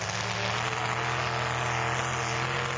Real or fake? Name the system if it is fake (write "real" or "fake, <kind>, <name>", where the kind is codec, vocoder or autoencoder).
real